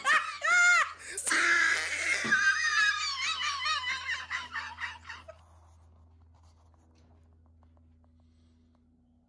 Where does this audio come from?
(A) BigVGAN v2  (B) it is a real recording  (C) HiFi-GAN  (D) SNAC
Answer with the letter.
B